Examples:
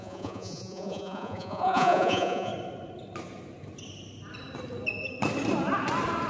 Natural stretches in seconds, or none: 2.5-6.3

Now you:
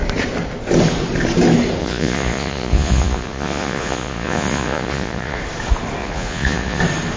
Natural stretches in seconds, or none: 0.0-1.8; 5.4-6.0; 6.8-7.2